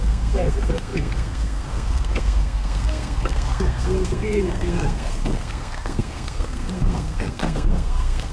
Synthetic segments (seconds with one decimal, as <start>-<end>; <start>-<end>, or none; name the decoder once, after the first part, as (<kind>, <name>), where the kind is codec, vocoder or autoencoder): 0.0-8.3 (codec, SNAC)